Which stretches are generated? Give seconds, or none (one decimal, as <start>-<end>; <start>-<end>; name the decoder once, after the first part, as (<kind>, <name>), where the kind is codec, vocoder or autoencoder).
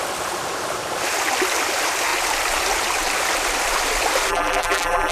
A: 4.3-5.1 (vocoder, BigVGAN v2)